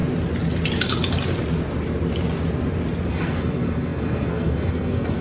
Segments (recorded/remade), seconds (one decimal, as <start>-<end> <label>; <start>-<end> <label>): 0.0-3.1 recorded; 3.1-5.2 remade